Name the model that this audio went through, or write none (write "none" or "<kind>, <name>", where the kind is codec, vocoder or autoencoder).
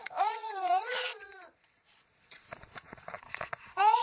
vocoder, Vocos